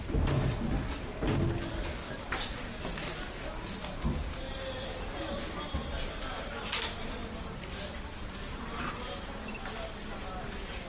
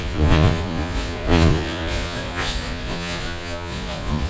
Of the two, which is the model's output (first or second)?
second